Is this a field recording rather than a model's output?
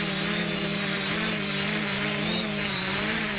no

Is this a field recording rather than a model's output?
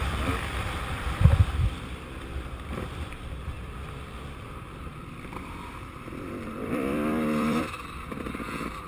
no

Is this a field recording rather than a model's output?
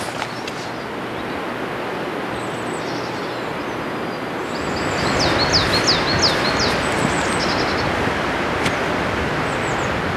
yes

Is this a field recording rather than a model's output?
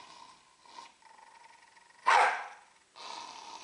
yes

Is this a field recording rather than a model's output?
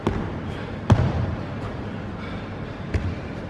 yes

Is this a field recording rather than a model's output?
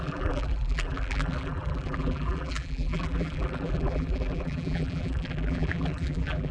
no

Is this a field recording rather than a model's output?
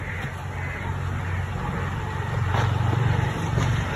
yes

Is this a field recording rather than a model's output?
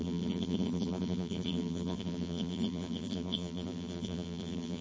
no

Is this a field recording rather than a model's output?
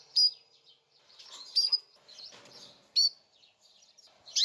yes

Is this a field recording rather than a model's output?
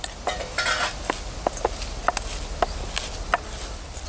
yes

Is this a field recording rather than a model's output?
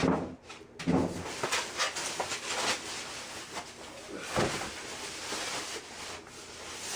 yes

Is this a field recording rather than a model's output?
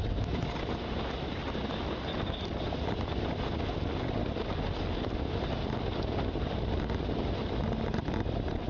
yes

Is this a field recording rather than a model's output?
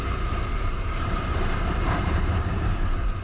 no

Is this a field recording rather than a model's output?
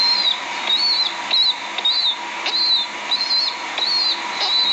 yes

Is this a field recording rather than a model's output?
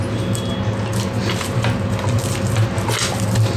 yes